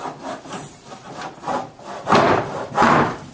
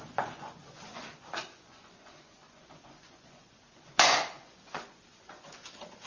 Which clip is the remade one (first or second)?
second